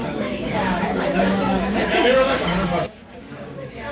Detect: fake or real fake